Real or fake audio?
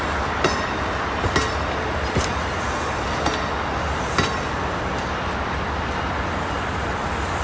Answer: real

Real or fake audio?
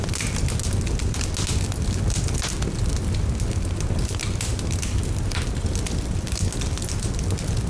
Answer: real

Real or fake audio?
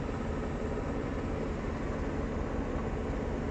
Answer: real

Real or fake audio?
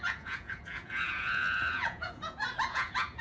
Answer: fake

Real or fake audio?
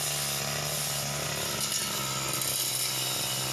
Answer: real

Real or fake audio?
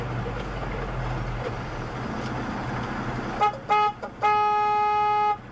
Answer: real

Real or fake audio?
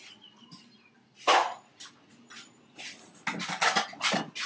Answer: real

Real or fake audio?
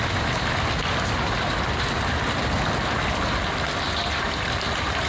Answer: real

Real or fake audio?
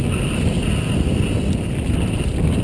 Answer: real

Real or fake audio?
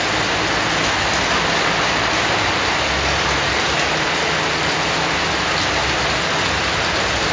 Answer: real